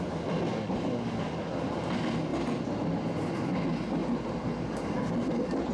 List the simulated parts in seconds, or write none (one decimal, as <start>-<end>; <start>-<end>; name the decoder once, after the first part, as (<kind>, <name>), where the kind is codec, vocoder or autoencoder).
0.5-1.5 (codec, DAC)